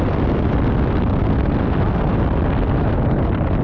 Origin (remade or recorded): recorded